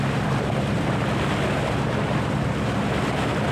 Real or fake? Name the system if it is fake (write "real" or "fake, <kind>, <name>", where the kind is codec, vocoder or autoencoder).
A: real